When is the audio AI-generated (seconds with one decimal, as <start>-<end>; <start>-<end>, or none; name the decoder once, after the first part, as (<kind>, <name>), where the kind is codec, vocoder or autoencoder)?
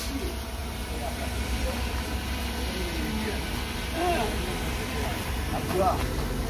0.6-2.4 (vocoder, BigVGAN v2); 5.1-5.8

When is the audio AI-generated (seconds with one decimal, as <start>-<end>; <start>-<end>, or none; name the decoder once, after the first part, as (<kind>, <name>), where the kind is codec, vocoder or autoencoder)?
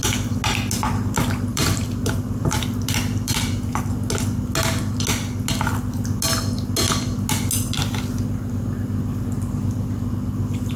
1.5-3.5 (vocoder, BigVGAN v2)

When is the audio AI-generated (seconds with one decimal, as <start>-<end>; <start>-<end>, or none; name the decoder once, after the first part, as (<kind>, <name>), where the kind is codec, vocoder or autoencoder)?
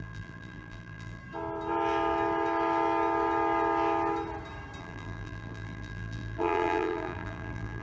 0.0-1.2 (vocoder, BigVGAN v2); 4.8-7.8